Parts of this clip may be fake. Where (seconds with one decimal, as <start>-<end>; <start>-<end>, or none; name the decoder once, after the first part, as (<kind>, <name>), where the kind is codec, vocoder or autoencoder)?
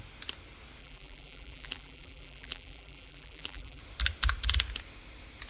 0.8-3.8 (vocoder, BigVGAN v2)